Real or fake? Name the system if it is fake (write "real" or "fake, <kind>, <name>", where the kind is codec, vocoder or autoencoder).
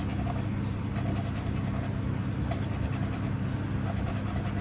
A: real